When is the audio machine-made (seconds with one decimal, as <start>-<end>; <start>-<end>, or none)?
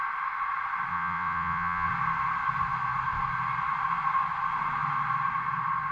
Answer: 0.9-1.9